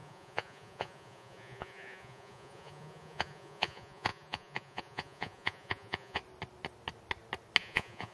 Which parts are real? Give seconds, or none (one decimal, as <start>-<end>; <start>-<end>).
6.2-7.6